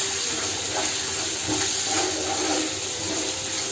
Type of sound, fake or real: real